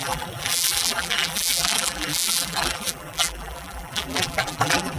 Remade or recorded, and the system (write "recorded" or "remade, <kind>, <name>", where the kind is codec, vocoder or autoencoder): remade, vocoder, BigVGAN v2